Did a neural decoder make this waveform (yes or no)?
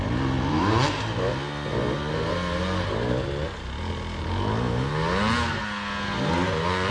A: no